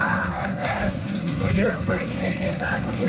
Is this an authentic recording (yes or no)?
no